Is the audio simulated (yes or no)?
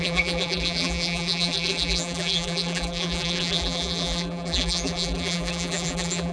yes